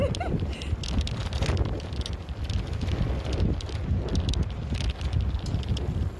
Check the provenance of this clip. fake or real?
real